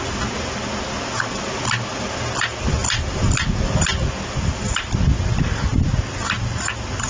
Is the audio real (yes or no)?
yes